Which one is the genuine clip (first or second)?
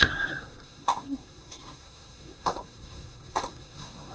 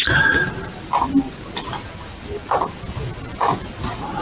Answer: second